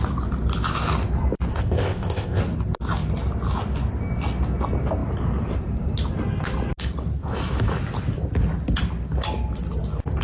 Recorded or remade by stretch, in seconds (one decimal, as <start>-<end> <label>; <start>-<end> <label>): 0.0-1.5 recorded; 1.5-2.4 remade; 2.4-10.2 recorded